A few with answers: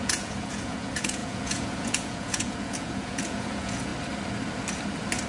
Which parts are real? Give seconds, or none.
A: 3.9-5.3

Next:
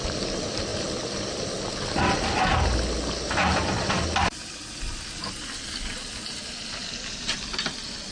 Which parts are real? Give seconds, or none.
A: 0.0-8.1